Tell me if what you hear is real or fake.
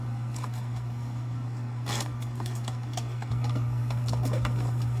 fake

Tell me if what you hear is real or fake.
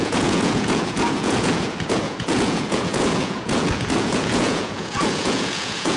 fake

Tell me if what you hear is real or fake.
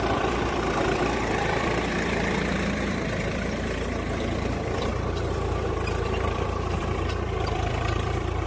fake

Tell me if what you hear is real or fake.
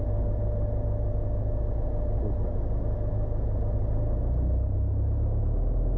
real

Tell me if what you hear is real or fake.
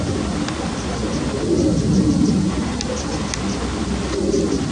real